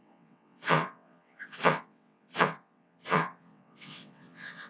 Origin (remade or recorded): remade